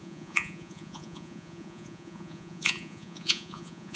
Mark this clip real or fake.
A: fake